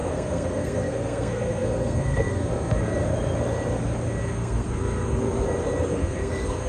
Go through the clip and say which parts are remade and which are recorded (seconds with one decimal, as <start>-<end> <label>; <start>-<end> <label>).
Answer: 0.0-2.9 remade; 2.9-4.2 recorded; 4.2-5.2 remade; 5.2-5.9 recorded; 5.9-6.7 remade